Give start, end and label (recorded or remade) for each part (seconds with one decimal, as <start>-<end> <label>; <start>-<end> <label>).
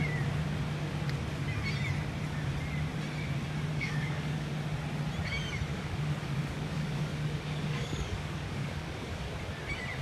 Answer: 0.0-3.7 recorded; 3.7-4.5 remade; 4.5-5.7 recorded; 5.7-9.3 remade; 9.3-10.0 recorded